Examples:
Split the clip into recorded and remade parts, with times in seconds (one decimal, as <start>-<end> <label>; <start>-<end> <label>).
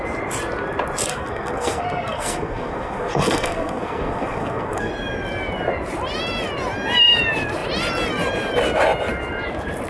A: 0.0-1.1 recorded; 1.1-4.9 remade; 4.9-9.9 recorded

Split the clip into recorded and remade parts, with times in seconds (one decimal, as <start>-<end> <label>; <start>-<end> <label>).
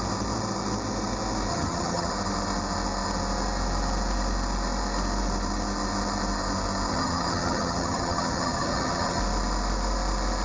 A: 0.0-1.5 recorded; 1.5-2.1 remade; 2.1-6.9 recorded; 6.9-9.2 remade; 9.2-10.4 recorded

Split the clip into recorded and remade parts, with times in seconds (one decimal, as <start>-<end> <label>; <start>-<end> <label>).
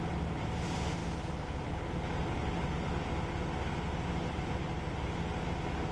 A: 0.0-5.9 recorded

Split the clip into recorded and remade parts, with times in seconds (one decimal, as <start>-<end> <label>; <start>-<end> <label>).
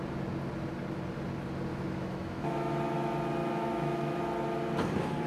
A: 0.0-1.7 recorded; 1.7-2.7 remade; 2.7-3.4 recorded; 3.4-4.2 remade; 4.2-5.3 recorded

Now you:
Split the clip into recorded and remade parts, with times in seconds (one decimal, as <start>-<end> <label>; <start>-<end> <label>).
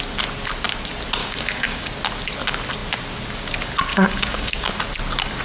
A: 0.0-1.2 recorded; 1.2-1.9 remade; 1.9-3.9 recorded; 3.9-4.7 remade; 4.7-5.4 recorded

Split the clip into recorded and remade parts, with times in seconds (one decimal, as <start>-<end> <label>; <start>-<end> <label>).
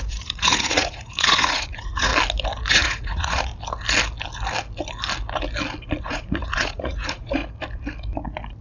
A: 0.0-2.1 remade; 2.1-2.7 recorded; 2.7-3.5 remade; 3.5-6.0 recorded; 6.0-7.4 remade; 7.4-8.6 recorded